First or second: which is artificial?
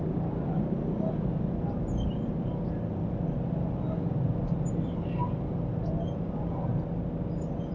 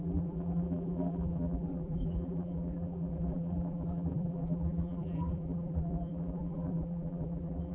second